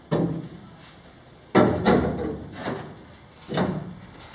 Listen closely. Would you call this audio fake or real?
real